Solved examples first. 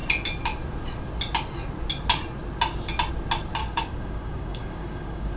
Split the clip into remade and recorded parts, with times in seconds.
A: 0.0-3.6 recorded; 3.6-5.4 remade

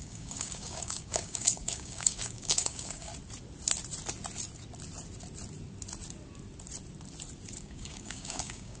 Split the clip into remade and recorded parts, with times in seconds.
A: 0.0-3.1 remade; 3.1-7.6 recorded; 7.6-8.8 remade

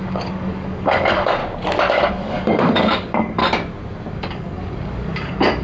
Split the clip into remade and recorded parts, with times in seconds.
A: 0.0-1.4 remade; 1.4-2.1 recorded; 2.1-3.4 remade; 3.4-4.1 recorded; 4.1-5.6 remade

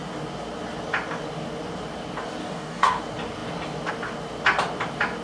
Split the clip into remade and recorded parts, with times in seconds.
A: 0.0-2.4 recorded; 2.4-3.0 remade; 3.0-5.2 recorded